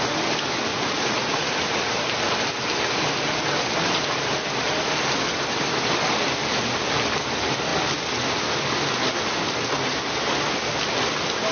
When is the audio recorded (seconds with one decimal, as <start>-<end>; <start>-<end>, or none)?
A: 0.0-0.7; 1.8-11.5